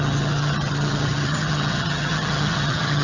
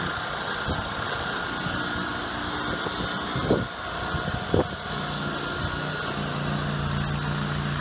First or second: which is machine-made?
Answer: first